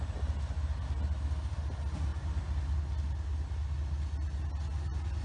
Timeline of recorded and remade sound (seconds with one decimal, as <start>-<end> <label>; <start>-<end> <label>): 0.0-5.2 recorded